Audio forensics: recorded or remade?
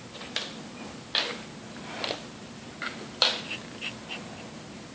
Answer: recorded